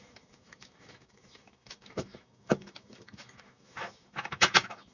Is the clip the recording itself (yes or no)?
no